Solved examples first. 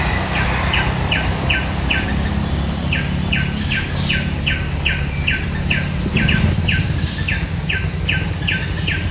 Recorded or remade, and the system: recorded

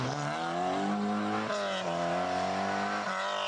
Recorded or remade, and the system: recorded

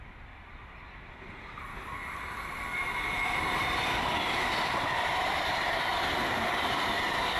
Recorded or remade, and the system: remade, vocoder, BigVGAN v2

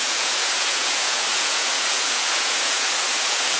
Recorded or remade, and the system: remade, vocoder, Vocos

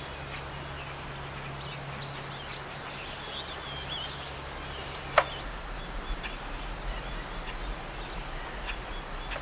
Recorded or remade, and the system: recorded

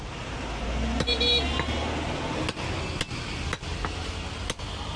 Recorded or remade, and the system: recorded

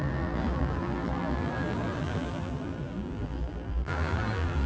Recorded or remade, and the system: remade, vocoder, BigVGAN v2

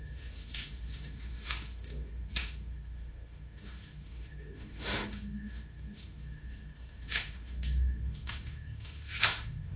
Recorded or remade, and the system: remade, autoencoder, DAC-VAE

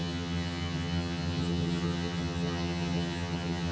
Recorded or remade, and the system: remade, vocoder, HiFi-GAN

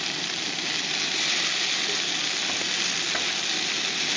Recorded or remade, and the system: recorded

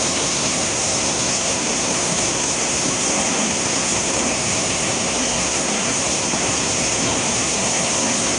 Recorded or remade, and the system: remade, codec, SNAC